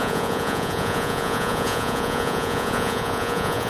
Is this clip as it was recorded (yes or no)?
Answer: no